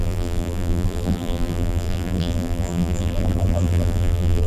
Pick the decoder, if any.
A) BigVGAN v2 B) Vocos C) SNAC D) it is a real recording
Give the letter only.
A